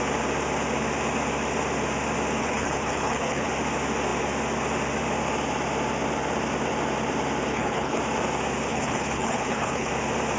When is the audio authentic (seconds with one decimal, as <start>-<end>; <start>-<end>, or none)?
0.0-2.4; 3.5-7.5; 8.0-8.7; 9.9-10.4

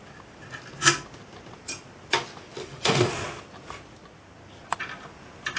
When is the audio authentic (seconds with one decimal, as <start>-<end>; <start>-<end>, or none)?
0.0-2.6; 3.1-5.6

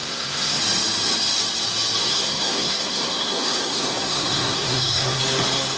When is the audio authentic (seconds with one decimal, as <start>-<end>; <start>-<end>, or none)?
0.6-2.1; 5.2-5.8